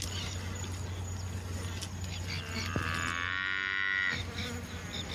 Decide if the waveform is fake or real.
real